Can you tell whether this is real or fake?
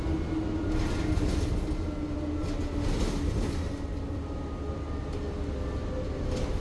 real